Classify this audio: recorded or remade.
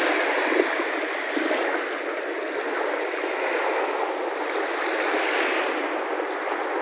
recorded